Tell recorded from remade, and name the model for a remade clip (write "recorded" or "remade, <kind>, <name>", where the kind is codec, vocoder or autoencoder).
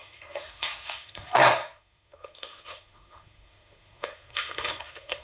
remade, codec, SNAC